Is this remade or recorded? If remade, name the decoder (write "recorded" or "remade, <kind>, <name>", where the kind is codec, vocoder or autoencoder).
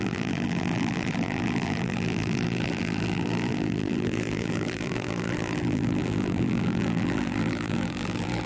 remade, vocoder, BigVGAN v2